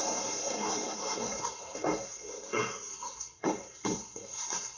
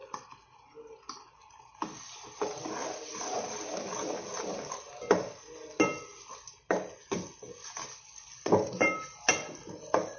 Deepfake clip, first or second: first